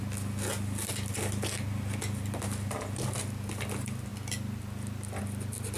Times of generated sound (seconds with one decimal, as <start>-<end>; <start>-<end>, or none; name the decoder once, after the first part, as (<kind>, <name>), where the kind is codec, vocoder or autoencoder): none